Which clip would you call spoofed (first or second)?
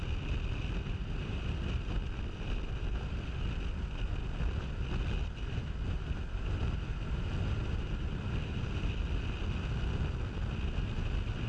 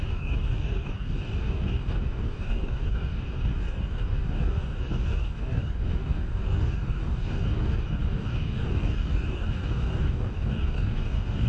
second